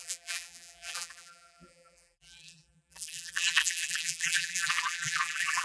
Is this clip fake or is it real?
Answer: fake